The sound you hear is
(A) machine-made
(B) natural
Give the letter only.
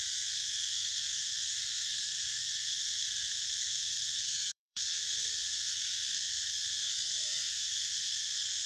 A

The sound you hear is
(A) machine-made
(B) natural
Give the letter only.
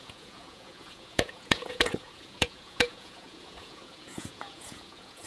A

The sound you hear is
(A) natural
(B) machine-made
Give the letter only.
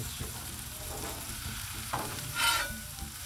B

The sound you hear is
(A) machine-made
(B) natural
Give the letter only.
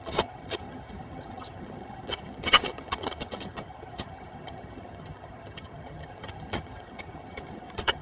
A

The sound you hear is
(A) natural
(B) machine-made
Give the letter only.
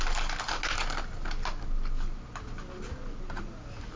A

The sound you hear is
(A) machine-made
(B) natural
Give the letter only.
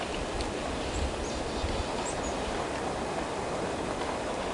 A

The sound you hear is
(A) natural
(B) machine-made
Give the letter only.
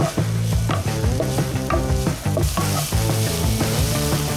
A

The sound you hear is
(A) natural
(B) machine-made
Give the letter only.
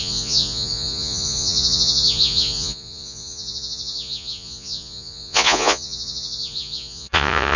B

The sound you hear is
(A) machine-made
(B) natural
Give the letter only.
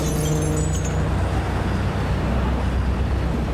B